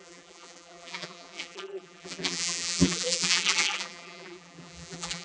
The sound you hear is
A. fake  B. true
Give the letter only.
A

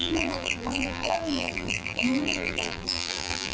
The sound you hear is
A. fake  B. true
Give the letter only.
A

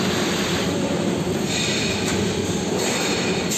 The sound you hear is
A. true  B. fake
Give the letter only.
B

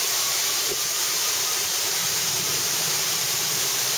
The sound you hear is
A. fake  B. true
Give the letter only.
A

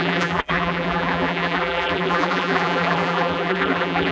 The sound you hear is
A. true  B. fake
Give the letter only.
B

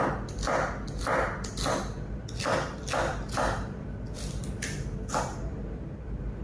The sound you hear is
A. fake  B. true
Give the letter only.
B